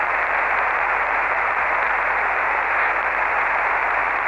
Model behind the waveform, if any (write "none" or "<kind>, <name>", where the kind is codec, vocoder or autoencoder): vocoder, BigVGAN v2